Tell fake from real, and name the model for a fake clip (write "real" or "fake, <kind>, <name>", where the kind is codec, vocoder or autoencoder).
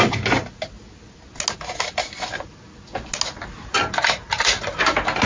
real